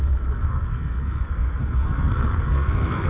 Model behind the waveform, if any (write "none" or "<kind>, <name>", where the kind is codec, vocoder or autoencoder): codec, SNAC